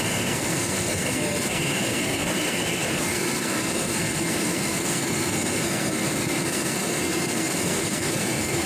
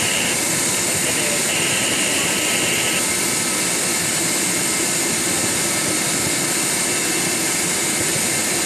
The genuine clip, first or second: second